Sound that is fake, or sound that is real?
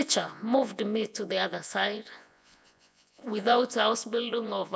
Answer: fake